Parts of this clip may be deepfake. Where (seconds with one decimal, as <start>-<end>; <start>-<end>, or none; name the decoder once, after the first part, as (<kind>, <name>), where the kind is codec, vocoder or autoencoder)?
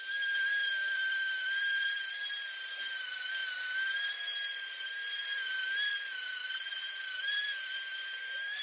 0.0-3.4 (vocoder, BigVGAN v2); 4.2-8.6